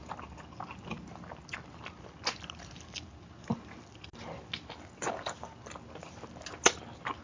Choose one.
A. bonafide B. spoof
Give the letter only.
A